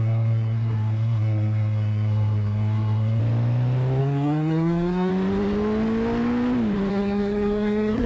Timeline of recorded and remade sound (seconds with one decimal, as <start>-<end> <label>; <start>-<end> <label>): 0.0-3.2 remade; 3.2-4.0 recorded; 4.0-5.1 remade; 5.1-6.9 recorded; 6.9-8.1 remade